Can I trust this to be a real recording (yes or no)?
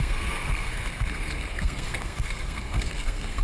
no